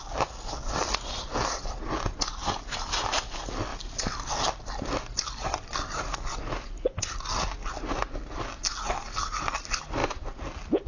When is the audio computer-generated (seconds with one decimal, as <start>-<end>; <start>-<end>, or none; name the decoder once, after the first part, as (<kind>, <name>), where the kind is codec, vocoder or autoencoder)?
3.7-4.5 (vocoder, BigVGAN v2); 5.5-7.2

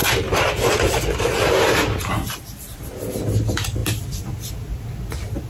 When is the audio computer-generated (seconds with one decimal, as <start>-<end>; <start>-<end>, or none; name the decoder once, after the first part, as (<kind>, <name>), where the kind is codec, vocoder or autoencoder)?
none

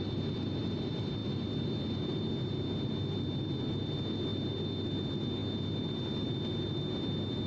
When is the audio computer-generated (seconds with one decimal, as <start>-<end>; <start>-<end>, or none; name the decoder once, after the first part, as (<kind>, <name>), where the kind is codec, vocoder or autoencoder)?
none

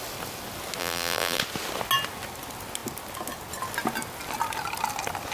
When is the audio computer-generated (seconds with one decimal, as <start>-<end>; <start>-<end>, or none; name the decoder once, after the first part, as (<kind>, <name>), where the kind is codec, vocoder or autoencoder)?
0.8-1.4 (vocoder, BigVGAN v2)

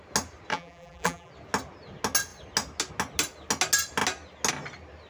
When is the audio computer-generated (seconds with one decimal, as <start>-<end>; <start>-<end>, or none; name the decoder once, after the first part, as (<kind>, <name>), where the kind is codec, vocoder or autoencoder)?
0.5-1.3 (vocoder, BigVGAN v2)